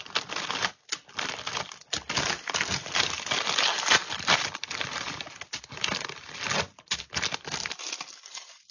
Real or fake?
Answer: real